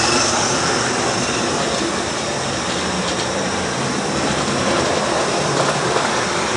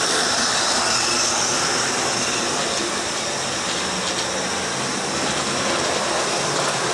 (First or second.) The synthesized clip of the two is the first